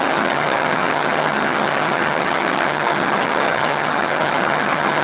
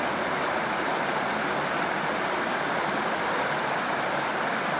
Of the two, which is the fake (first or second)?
first